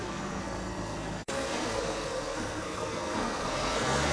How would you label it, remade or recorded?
remade